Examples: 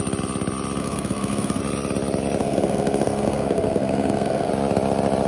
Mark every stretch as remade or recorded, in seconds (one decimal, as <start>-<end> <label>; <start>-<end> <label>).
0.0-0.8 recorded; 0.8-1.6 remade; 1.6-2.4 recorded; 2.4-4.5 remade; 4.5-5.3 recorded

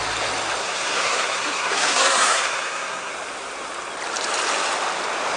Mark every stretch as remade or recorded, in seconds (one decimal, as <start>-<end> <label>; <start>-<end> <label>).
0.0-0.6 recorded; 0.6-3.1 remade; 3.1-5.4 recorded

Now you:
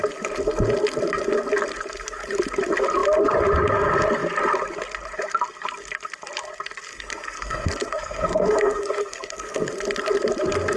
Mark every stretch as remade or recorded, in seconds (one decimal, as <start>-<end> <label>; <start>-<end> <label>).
0.0-6.9 recorded; 6.9-9.7 remade; 9.7-10.8 recorded

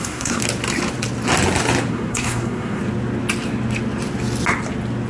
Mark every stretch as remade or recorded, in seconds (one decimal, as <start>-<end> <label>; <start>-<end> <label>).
0.0-0.4 remade; 0.4-1.9 recorded; 1.9-2.8 remade; 2.8-5.1 recorded